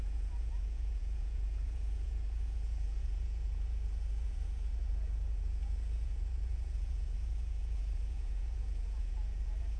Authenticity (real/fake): fake